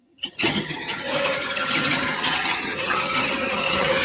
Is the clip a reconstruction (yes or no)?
yes